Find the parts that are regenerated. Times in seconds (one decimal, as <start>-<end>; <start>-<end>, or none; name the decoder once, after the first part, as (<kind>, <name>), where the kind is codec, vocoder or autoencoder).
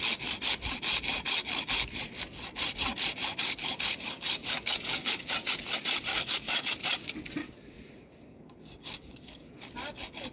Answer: 3.4-5.3 (codec, DAC); 6.1-6.7; 7.4-9.5